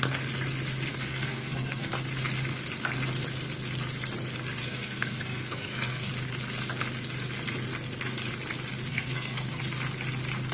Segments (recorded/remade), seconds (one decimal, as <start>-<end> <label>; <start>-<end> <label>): 0.0-0.9 recorded; 0.9-1.9 remade; 1.9-4.6 recorded; 4.6-6.1 remade; 6.1-8.9 recorded; 8.9-9.6 remade; 9.6-10.5 recorded